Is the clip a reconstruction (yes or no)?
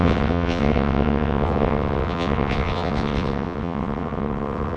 yes